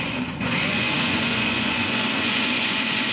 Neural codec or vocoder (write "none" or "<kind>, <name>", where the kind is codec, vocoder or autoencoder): vocoder, Vocos